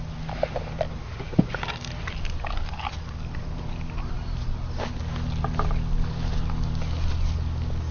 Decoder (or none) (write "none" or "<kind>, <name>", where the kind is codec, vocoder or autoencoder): none